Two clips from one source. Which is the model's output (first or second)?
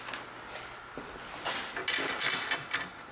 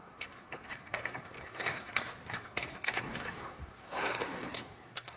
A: second